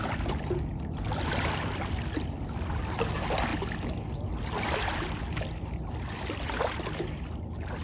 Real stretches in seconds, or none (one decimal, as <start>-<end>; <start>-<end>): 0.0-7.8